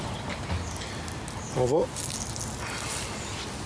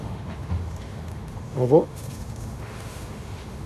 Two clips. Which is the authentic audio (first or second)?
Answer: first